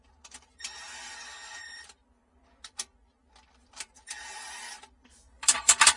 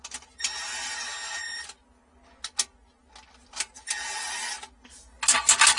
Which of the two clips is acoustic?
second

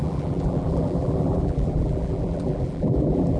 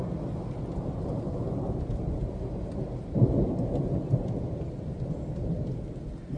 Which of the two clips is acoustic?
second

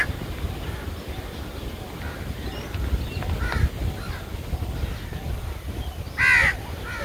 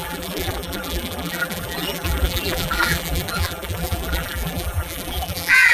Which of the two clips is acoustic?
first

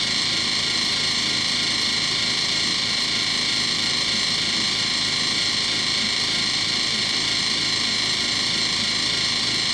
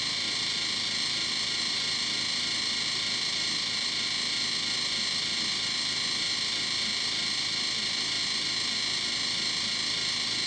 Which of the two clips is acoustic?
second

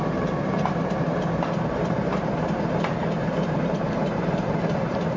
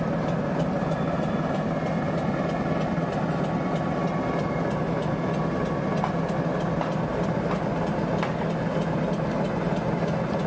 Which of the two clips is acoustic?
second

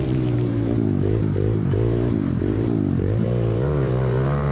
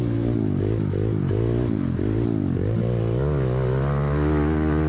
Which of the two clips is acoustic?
second